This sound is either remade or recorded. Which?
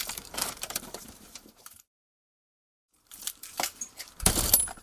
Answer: remade